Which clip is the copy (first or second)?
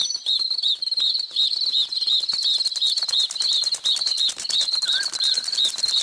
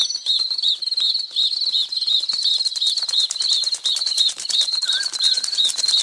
second